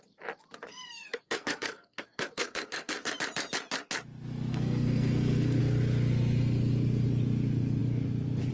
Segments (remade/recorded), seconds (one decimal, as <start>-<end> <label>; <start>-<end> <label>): 0.0-0.7 recorded; 0.7-3.1 remade; 3.1-4.5 recorded; 4.5-5.6 remade; 5.6-8.5 recorded